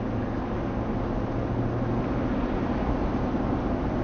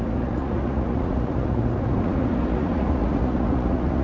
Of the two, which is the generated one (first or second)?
second